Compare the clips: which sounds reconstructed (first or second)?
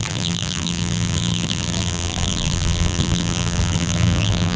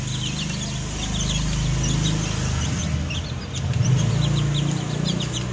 first